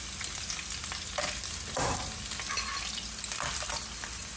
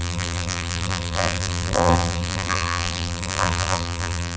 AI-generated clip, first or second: second